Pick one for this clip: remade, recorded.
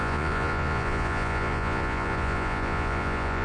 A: remade